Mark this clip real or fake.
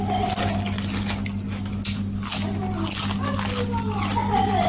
real